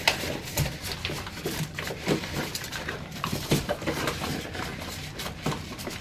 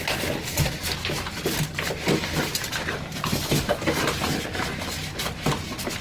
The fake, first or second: first